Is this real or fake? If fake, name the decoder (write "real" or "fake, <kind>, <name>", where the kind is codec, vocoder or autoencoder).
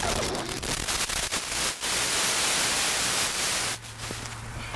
real